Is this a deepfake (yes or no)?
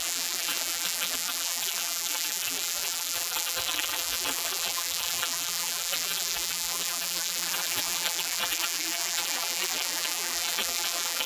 yes